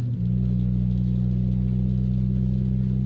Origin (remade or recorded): recorded